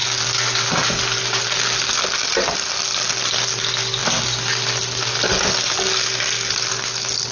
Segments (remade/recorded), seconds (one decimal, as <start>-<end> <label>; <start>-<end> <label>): 0.0-7.3 recorded